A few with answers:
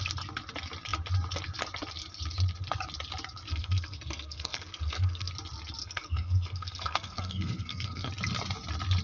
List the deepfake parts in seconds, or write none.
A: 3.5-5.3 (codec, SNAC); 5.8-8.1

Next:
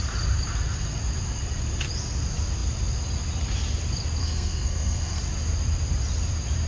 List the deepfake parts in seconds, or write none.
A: 4.2-5.2 (codec, SNAC)